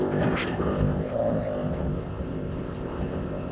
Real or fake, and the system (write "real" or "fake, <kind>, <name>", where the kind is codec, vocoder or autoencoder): fake, codec, ZipCodec